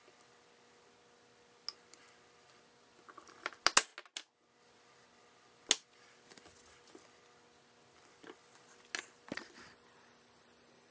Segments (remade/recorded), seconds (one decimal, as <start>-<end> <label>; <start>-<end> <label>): 0.0-10.9 recorded